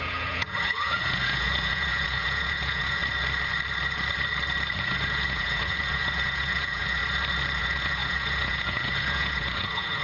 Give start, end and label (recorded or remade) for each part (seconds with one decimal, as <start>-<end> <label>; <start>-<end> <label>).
0.0-3.0 remade; 3.0-4.8 recorded; 4.8-7.0 remade; 7.0-7.6 recorded; 7.6-10.0 remade